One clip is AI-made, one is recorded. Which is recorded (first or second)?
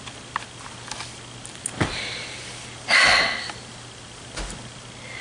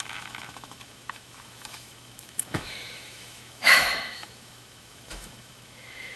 first